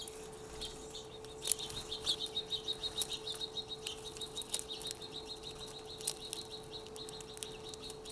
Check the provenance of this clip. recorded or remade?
recorded